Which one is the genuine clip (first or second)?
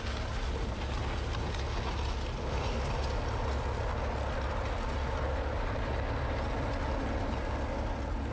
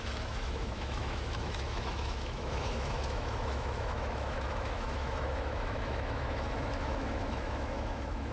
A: first